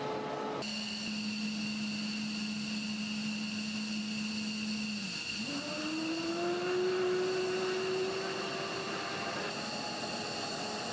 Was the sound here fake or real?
real